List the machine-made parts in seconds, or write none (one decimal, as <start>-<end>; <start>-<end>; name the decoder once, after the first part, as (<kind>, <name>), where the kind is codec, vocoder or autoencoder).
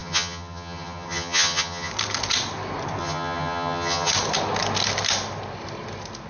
0.0-1.9 (vocoder, HiFi-GAN); 3.0-4.1